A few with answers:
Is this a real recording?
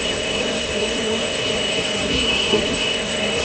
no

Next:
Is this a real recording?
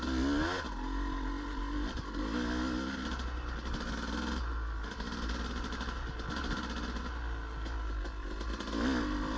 yes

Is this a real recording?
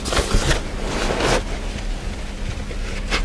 yes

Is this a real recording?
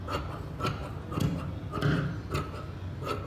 yes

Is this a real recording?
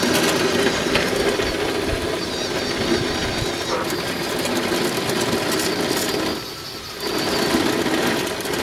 yes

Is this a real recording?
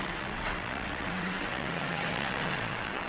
no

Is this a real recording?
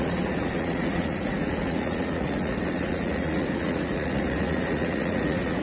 no